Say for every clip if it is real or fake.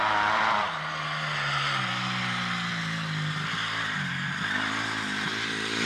real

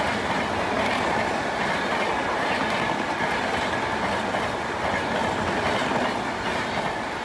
real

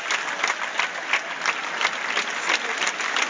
real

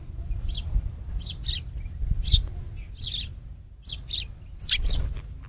real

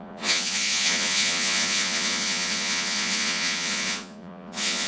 fake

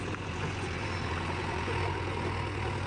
fake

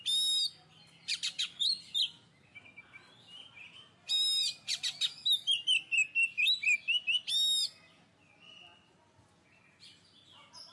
real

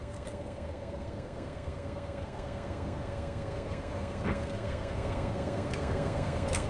fake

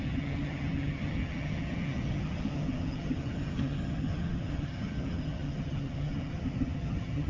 fake